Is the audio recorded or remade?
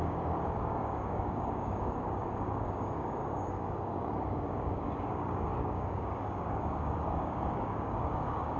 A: remade